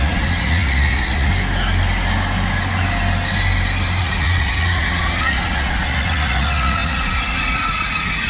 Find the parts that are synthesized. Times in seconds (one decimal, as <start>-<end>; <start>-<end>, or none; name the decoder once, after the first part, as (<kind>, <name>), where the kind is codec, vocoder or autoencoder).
0.0-1.3 (vocoder, Vocos); 4.0-8.3